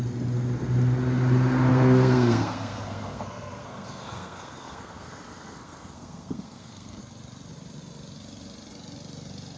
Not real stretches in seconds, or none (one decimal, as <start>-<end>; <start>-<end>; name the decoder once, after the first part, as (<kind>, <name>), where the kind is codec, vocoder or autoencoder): 1.7-7.0 (codec, SNAC)